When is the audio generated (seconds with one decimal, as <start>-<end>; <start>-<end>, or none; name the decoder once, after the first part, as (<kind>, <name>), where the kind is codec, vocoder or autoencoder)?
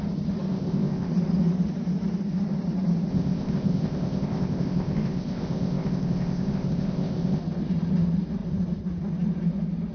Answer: 0.5-1.1 (codec, ZipCodec); 3.1-7.4